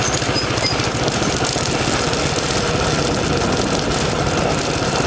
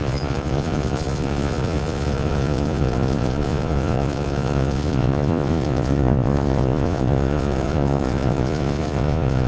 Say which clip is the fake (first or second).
second